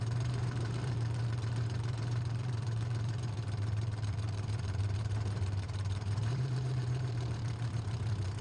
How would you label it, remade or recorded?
remade